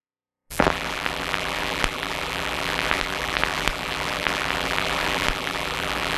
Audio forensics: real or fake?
fake